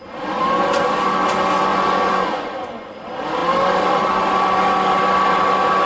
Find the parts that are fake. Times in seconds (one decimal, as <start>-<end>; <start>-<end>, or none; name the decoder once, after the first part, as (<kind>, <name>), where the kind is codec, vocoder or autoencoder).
1.7-2.9 (vocoder, Vocos)